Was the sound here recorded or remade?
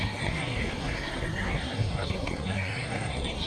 remade